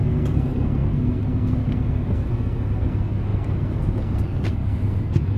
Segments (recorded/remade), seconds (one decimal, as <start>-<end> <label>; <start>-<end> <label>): 0.0-5.4 remade